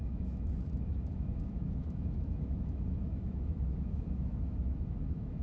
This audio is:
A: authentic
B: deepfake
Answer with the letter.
B